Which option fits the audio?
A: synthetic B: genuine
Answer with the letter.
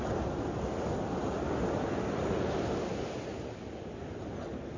B